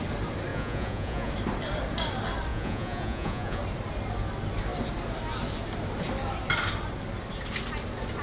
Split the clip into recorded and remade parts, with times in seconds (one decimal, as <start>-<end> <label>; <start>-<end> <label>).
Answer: 0.0-0.5 recorded; 0.5-1.3 remade; 1.3-2.5 recorded; 2.5-3.6 remade; 3.6-8.2 recorded